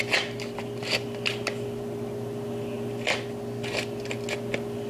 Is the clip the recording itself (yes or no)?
yes